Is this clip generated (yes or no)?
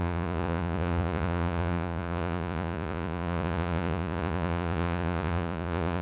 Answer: yes